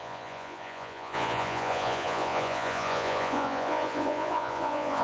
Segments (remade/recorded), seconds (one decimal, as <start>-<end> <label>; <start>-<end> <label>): 0.0-5.0 remade